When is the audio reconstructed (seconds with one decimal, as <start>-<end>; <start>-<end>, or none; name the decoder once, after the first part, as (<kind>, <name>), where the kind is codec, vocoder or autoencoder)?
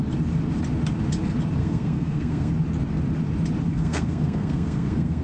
1.6-2.5 (codec, SNAC); 3.7-5.2